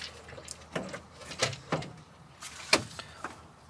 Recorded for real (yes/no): yes